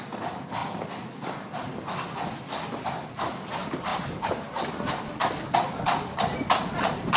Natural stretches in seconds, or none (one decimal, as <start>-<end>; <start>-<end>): 0.0-3.9; 4.7-7.2